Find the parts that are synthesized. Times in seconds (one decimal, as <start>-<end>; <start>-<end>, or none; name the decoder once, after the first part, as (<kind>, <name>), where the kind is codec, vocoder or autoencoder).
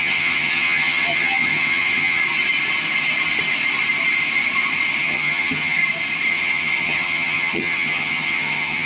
0.0-2.2 (vocoder, HiFi-GAN); 5.0-5.8; 6.3-8.9